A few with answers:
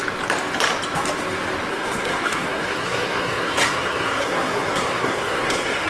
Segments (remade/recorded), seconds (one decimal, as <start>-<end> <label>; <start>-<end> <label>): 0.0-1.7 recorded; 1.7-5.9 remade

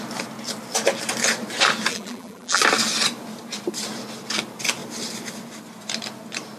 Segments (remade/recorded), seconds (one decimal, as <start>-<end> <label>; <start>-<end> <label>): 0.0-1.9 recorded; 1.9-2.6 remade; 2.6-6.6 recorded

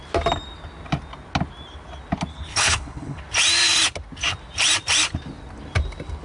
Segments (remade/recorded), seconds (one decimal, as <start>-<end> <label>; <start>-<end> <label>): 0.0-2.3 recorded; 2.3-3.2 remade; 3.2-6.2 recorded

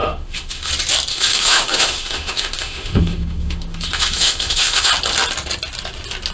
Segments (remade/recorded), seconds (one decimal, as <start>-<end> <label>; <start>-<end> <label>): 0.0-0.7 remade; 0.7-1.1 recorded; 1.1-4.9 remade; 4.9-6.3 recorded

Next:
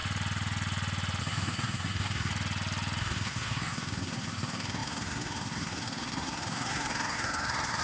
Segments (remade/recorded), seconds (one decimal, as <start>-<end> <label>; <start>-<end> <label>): 0.0-1.2 recorded; 1.2-2.3 remade; 2.3-3.0 recorded; 3.0-7.8 remade

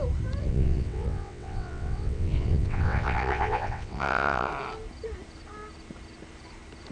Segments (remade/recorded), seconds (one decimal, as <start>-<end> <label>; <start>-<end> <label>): 0.0-0.4 recorded; 0.4-4.5 remade; 4.5-6.9 recorded

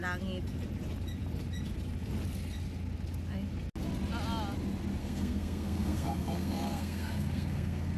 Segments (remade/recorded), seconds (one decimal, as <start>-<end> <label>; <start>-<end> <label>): 0.0-5.0 recorded; 5.0-8.0 remade

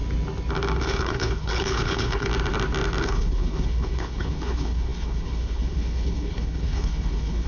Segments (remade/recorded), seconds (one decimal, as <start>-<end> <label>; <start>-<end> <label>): 0.0-0.8 recorded; 0.8-2.3 remade; 2.3-3.0 recorded; 3.0-7.5 remade